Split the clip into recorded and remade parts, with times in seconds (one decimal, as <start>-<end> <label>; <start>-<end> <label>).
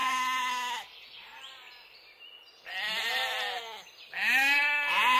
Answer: 0.0-5.2 recorded